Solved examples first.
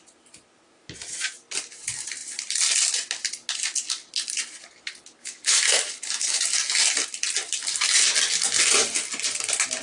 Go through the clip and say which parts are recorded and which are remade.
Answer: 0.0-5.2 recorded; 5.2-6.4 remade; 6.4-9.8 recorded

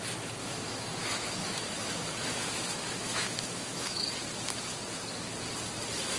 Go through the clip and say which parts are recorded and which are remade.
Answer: 0.0-0.4 recorded; 0.4-4.1 remade; 4.1-6.2 recorded

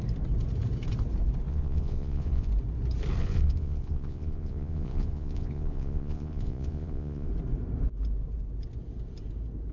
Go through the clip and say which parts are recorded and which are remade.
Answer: 0.0-1.5 recorded; 1.5-2.5 remade; 2.5-3.2 recorded; 3.2-7.3 remade; 7.3-9.7 recorded

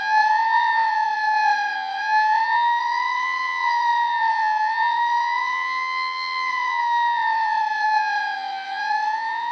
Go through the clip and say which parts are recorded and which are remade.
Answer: 0.0-9.5 remade

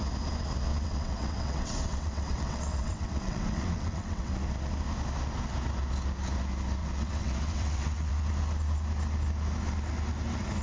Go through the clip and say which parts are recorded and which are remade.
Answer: 0.0-0.7 recorded; 0.7-4.3 remade; 4.3-6.8 recorded; 6.8-8.1 remade; 8.1-10.6 recorded

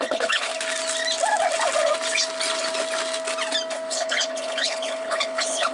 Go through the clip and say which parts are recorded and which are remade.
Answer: 0.0-0.5 remade; 0.5-3.9 recorded; 3.9-5.7 remade

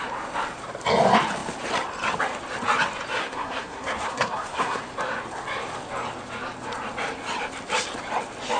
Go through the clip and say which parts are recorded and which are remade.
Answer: 0.0-3.2 recorded; 3.2-4.8 remade; 4.8-8.6 recorded

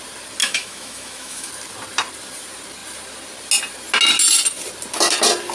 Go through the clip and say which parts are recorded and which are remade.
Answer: 0.0-0.4 recorded; 0.4-1.5 remade; 1.5-5.5 recorded